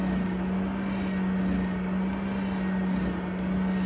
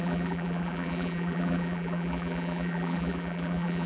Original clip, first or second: first